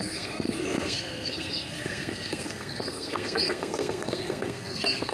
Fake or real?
fake